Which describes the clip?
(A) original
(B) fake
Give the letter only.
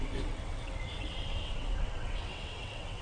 B